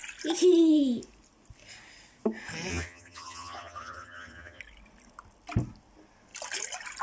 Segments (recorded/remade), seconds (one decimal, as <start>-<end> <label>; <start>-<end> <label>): 0.0-2.7 recorded; 2.7-4.6 remade; 4.6-7.0 recorded